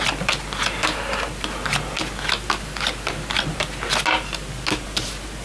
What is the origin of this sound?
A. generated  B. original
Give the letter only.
B